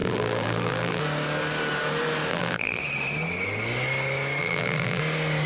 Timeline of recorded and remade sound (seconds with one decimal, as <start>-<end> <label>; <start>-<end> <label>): 0.0-1.0 remade; 1.0-2.3 recorded; 2.3-2.8 remade; 2.8-4.4 recorded; 4.4-5.0 remade; 5.0-5.5 recorded